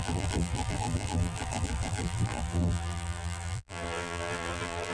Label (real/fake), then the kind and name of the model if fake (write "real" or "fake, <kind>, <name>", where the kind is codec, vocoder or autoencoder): fake, vocoder, BigVGAN v2